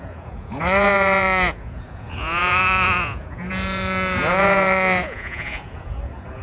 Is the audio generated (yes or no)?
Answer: yes